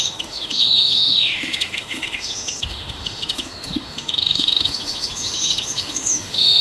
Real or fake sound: fake